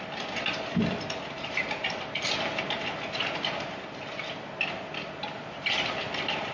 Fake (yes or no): no